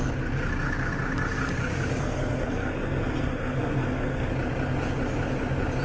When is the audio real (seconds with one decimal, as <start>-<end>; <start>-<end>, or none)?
0.0-2.0; 4.3-5.8